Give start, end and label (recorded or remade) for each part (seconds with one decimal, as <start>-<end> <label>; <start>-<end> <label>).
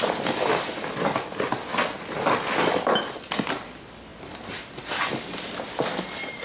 0.0-4.1 recorded; 4.1-4.7 remade; 4.7-6.4 recorded